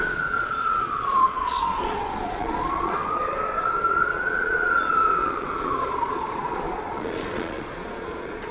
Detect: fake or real fake